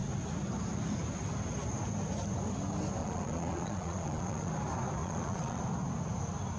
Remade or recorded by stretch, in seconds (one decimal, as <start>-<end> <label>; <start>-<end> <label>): 0.0-3.0 recorded; 3.0-4.5 remade; 4.5-5.0 recorded; 5.0-5.6 remade; 5.6-6.6 recorded